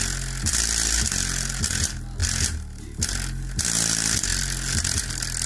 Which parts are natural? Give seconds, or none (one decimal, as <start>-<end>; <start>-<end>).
0.0-5.5